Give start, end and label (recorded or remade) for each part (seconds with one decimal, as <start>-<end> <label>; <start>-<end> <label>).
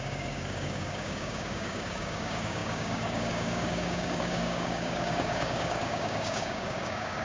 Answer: 0.0-7.2 remade